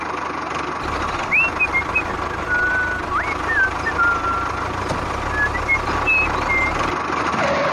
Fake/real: real